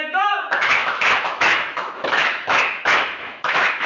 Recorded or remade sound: remade